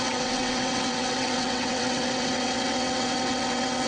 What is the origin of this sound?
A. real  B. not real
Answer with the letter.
B